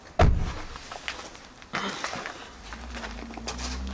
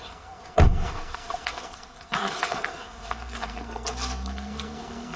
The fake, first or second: second